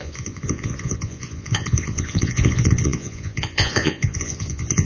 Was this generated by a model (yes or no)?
yes